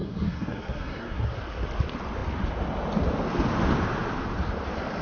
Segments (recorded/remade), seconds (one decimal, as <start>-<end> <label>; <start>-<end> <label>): 0.0-1.3 remade; 1.3-5.0 recorded